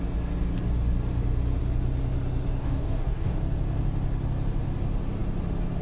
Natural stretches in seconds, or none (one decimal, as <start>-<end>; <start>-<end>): 0.0-2.6; 3.4-5.8